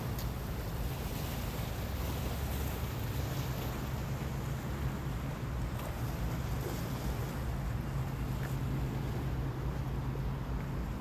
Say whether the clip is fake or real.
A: real